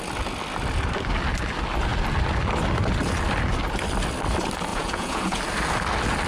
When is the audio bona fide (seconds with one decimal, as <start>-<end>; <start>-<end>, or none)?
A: 0.0-4.7; 5.4-6.3